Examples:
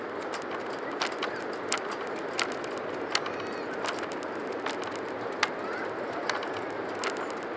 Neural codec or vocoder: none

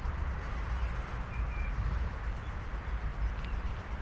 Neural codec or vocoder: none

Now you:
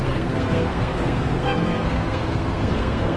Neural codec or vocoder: codec, SNAC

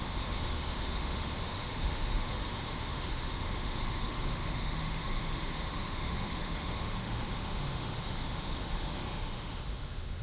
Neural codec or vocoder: autoencoder, DAC-VAE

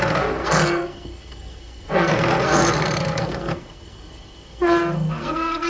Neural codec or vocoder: codec, SNAC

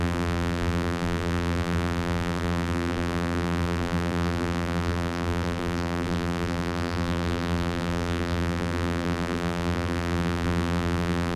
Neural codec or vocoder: vocoder, BigVGAN v2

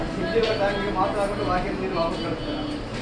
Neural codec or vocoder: none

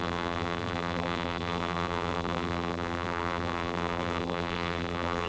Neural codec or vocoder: vocoder, BigVGAN v2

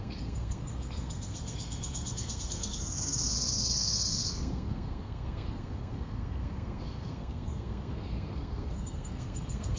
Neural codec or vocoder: codec, SNAC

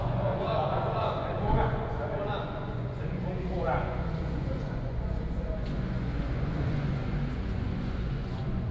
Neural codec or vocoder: vocoder, Vocos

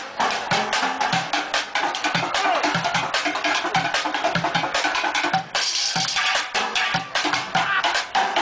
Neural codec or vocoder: none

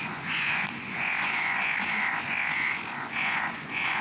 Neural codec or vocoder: vocoder, Vocos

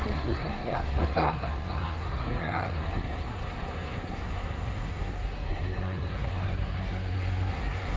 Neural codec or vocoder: codec, SNAC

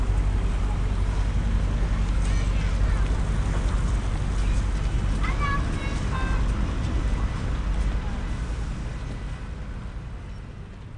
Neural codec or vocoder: none